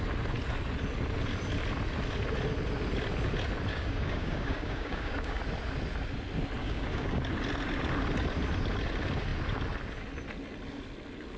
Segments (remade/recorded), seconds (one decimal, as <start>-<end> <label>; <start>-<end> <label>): 0.0-3.7 recorded; 3.7-5.4 remade; 5.4-6.6 recorded; 6.6-7.2 remade; 7.2-11.4 recorded